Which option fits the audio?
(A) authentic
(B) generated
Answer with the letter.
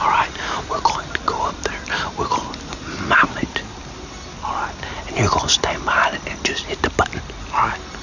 A